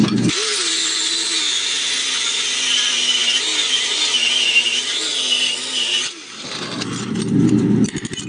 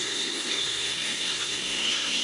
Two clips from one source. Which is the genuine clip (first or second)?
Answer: first